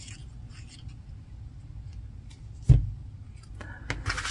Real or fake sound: real